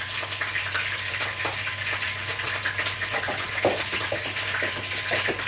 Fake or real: real